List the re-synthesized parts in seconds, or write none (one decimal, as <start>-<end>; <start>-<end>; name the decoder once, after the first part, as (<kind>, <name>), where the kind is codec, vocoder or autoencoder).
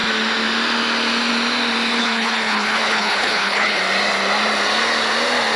2.0-3.8 (codec, HILCodec)